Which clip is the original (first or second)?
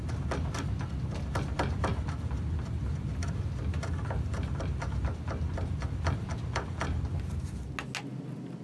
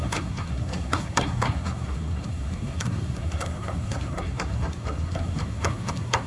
first